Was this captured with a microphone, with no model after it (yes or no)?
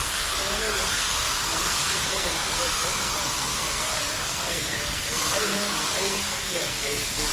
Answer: no